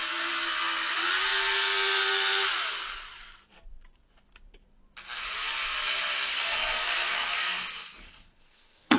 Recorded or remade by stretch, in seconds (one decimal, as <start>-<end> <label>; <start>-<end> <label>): 0.0-6.3 recorded; 6.3-9.0 remade